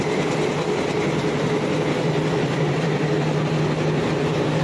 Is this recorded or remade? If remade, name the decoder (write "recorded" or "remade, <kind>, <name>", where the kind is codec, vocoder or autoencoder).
recorded